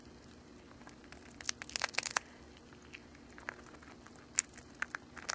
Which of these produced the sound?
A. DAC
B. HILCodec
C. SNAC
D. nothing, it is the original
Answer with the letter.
D